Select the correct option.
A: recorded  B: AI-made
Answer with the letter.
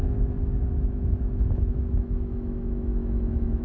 B